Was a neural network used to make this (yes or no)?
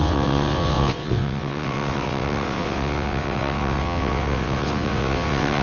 yes